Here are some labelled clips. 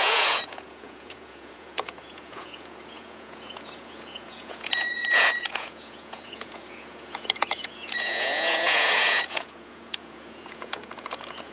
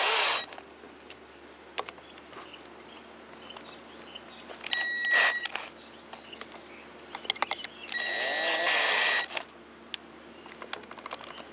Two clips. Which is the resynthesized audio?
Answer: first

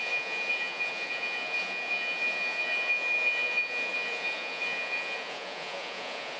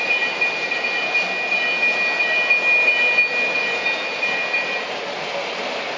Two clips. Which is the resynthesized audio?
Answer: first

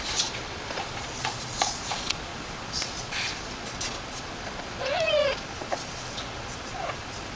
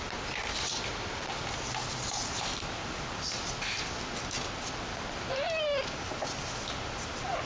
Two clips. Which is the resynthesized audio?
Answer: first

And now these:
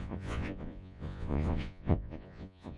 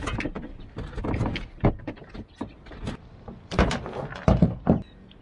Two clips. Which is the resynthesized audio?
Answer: first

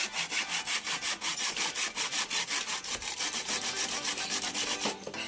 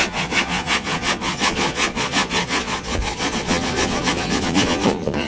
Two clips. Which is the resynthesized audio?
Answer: second